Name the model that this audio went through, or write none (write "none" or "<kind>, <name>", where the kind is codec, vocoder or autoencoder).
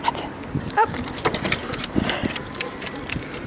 none